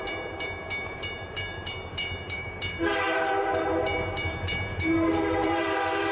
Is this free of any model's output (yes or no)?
no